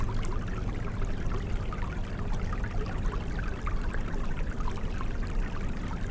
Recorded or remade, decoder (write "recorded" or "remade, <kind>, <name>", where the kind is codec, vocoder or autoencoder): recorded